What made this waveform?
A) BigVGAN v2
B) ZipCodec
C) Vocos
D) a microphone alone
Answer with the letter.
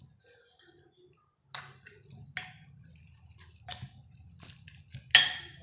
D